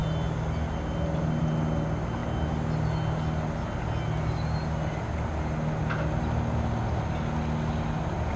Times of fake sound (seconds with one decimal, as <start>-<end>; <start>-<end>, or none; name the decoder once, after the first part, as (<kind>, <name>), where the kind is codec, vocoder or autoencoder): none